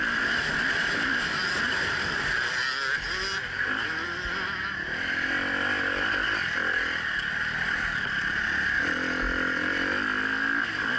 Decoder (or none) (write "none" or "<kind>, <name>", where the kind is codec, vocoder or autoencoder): none